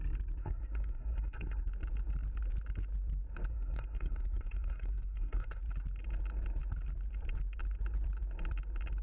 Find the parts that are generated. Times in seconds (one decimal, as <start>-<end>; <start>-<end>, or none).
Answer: 0.4-1.7; 3.5-5.6